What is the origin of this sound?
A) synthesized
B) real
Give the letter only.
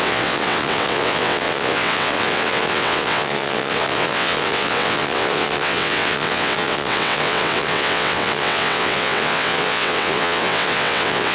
A